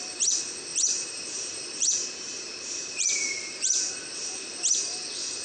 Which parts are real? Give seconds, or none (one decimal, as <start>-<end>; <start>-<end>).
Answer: 0.0-0.7; 3.9-5.4